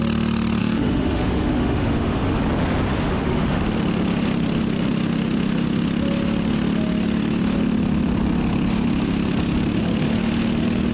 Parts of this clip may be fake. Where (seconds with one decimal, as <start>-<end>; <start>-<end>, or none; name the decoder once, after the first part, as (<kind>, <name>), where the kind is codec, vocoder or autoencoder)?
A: 0.6-2.4 (autoencoder, DAC-VAE); 2.9-3.6